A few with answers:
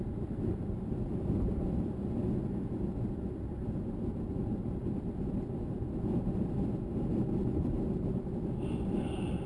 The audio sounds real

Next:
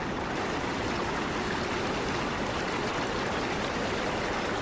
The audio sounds real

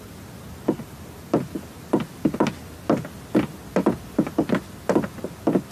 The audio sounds real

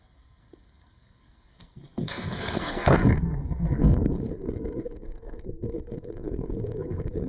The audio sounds fake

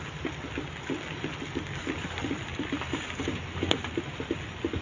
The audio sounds real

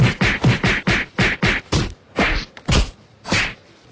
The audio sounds real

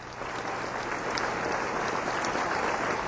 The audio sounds real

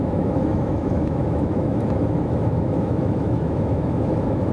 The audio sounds fake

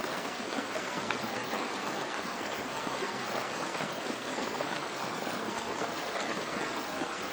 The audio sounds fake